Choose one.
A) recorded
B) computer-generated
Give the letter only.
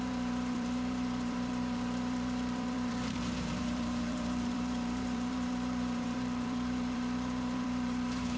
B